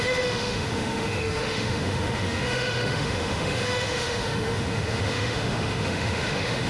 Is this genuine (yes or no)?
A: no